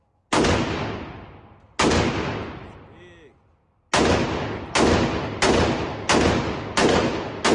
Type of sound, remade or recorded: recorded